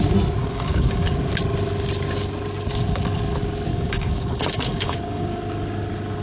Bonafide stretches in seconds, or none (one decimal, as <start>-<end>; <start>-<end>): 0.0-0.4; 1.1-3.7; 5.4-6.2